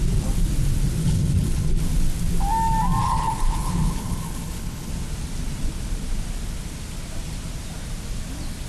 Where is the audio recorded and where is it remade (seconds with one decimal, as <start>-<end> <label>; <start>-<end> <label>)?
0.0-1.0 recorded; 1.0-1.8 remade; 1.8-3.0 recorded; 3.0-4.9 remade; 4.9-8.7 recorded